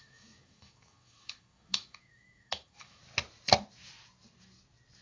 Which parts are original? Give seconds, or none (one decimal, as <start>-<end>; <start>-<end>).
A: 3.0-5.0